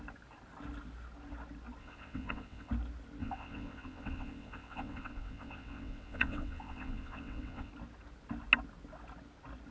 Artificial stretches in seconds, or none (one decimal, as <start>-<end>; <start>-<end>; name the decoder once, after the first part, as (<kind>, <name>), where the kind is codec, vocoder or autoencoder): 1.8-2.7 (vocoder, WaveNeXt); 3.2-7.7